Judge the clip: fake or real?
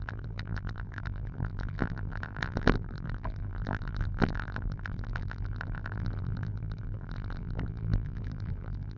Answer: fake